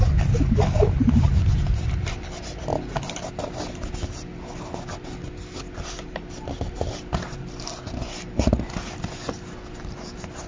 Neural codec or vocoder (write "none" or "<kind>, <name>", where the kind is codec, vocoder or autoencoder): none